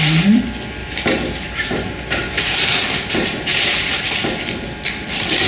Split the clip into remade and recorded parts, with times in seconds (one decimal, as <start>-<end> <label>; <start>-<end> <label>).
0.0-0.8 recorded; 0.8-4.1 remade; 4.1-5.5 recorded

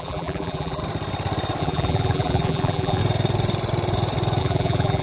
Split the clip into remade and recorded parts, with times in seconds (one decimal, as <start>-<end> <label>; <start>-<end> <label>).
0.0-0.8 remade; 0.8-1.6 recorded; 1.6-3.0 remade; 3.0-4.4 recorded; 4.4-5.0 remade